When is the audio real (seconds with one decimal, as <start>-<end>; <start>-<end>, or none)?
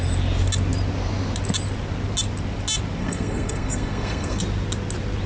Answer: 0.0-3.0; 4.4-5.3